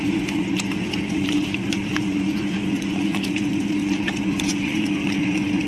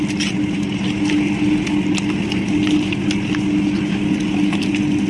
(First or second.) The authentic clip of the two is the second